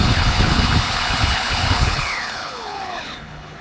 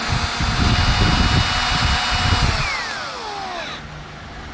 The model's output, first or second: first